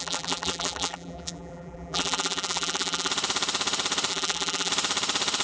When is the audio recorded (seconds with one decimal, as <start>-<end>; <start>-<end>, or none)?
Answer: 3.1-4.1; 4.7-5.4